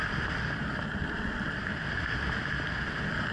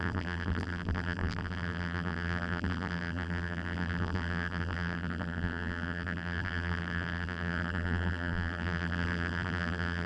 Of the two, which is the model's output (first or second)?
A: second